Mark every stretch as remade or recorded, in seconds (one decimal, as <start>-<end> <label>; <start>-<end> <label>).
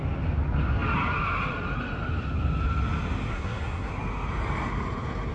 0.0-3.3 recorded; 3.3-3.9 remade; 3.9-5.3 recorded